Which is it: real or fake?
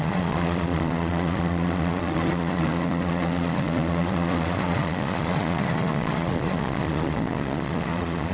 fake